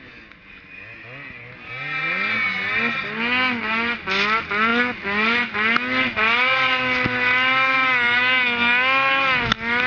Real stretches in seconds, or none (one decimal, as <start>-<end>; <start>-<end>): 0.0-9.9